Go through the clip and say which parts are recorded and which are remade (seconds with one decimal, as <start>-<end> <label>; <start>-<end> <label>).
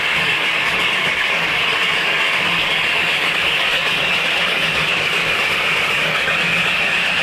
0.0-7.2 remade